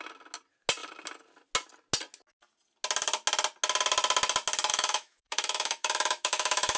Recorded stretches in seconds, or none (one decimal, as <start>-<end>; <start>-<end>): 0.0-4.7